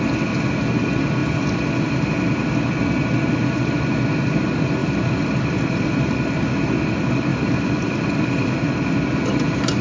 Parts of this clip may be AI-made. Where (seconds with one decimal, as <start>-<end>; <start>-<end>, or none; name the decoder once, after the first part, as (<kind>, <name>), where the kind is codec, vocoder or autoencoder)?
1.2-1.9 (vocoder, BigVGAN v2); 4.8-6.1; 7.3-8.7